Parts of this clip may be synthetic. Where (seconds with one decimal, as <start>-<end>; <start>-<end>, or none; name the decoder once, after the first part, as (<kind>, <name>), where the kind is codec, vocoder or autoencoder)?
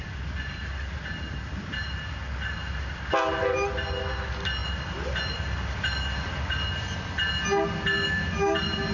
none